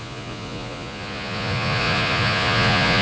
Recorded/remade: remade